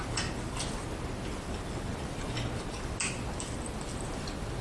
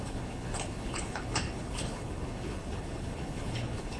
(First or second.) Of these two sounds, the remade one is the second